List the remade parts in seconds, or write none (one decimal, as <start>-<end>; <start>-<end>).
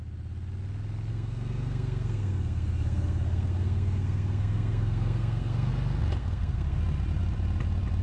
1.1-5.7; 6.2-6.8